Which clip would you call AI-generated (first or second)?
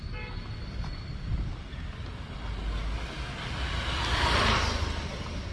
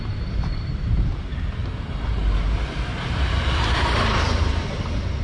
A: second